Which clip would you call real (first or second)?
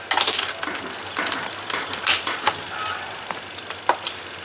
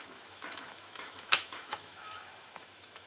first